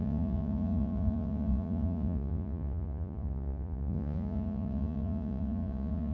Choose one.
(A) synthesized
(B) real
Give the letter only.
A